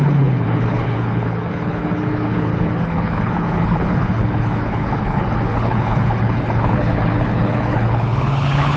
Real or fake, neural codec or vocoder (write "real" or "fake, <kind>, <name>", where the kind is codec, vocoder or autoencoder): fake, codec, HILCodec